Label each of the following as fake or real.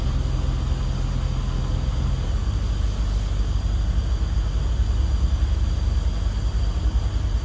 real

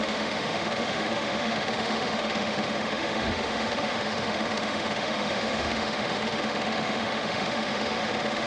fake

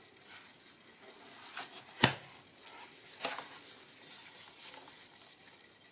real